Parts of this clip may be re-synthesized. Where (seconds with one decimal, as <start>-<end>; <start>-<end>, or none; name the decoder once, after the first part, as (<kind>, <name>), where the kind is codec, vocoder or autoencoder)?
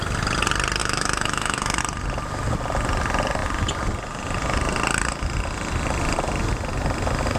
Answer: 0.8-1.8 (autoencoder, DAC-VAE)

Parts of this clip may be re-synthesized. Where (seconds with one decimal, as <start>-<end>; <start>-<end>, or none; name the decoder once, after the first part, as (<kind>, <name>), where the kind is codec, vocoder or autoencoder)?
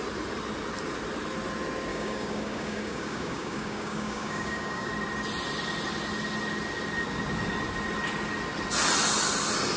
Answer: 1.9-4.9 (codec, DAC)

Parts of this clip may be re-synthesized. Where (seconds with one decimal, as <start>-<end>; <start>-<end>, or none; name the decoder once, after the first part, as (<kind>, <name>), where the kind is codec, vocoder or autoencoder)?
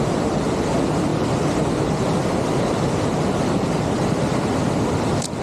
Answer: none